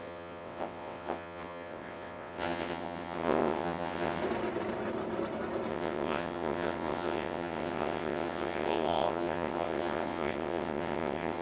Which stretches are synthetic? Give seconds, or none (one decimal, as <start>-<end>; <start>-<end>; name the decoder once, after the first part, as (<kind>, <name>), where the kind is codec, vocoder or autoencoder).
0.0-4.2 (vocoder, WaveNeXt); 5.7-11.4